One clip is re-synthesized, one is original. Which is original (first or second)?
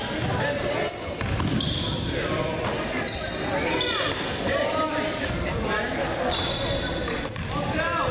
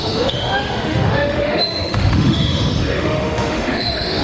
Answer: first